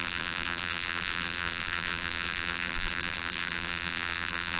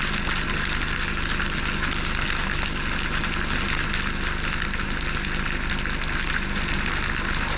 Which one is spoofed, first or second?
first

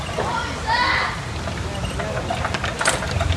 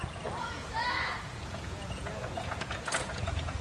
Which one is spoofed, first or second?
second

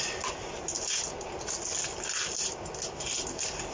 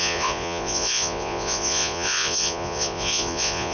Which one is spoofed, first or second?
second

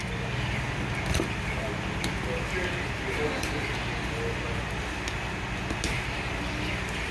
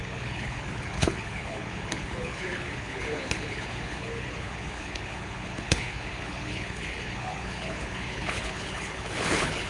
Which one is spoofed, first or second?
second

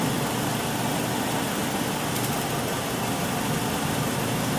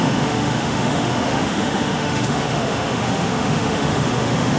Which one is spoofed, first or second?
second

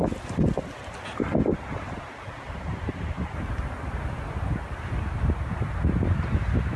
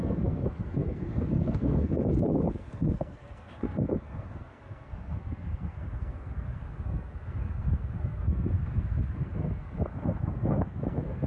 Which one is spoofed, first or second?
second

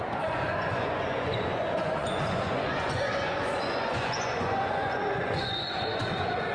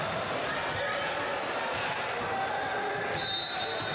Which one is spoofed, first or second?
first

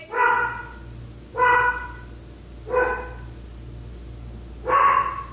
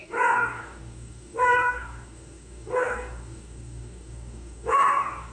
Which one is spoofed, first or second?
second